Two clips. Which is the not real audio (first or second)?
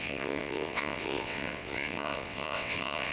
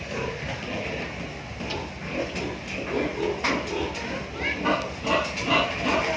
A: first